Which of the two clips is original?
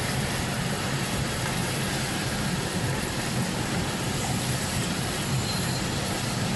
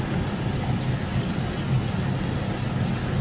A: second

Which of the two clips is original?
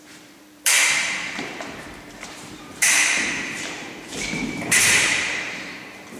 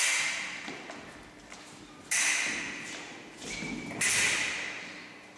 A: second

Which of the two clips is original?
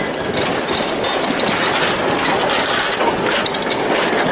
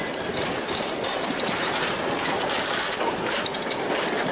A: first